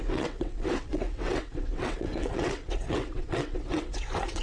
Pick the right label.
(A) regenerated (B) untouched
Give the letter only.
A